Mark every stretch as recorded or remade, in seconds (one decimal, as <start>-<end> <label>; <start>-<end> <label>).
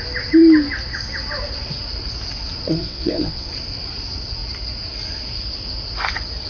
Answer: 0.0-2.8 recorded; 2.8-3.5 remade; 3.5-6.5 recorded